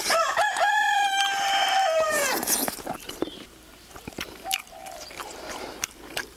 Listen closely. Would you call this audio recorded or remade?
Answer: remade